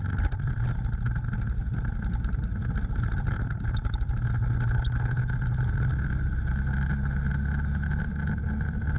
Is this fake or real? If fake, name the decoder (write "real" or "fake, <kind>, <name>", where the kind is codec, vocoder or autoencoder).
real